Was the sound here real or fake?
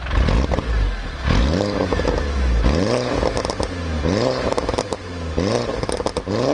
real